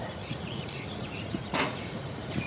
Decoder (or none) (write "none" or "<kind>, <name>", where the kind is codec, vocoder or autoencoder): vocoder, Vocos